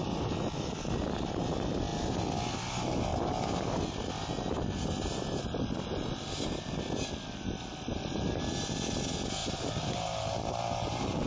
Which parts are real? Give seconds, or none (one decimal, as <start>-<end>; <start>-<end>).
0.0-9.4